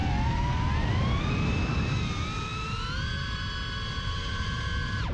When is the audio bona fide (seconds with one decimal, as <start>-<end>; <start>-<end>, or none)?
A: 0.0-5.1